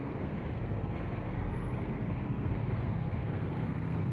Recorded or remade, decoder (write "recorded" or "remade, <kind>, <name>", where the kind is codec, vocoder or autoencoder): remade, codec, SNAC